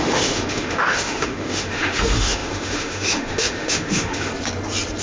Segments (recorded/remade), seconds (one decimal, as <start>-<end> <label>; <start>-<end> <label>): 0.0-4.3 remade; 4.3-5.0 recorded